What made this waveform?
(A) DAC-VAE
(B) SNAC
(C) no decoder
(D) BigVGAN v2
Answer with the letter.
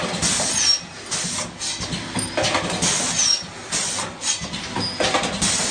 C